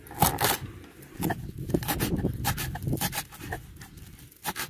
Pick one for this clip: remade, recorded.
recorded